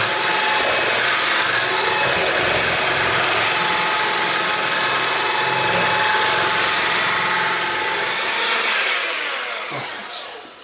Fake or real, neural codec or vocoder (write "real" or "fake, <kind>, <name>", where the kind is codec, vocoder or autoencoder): real